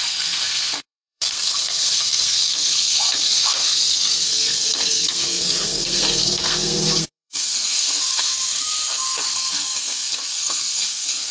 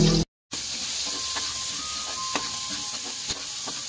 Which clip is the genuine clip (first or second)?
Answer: second